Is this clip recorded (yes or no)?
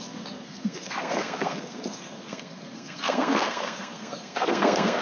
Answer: no